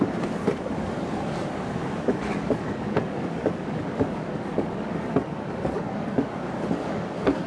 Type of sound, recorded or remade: remade